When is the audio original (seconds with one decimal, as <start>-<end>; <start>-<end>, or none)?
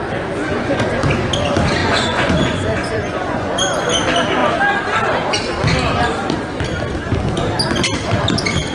0.0-0.4; 0.9-1.8; 3.8-8.7